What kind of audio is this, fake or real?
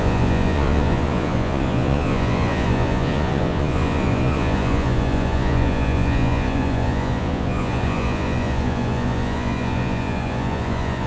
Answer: fake